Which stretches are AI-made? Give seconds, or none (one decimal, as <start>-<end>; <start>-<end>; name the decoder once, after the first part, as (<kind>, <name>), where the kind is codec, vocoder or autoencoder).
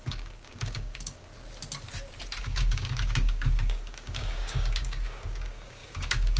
0.0-1.3 (codec, DAC); 2.4-6.4